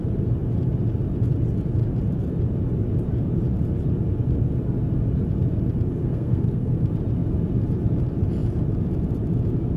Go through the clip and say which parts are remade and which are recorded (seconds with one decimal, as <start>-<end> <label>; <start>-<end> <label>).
0.0-6.0 recorded; 6.0-6.8 remade; 6.8-9.8 recorded